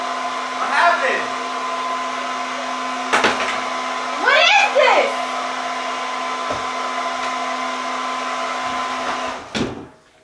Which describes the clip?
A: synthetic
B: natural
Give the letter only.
B